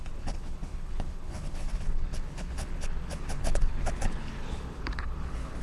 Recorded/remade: remade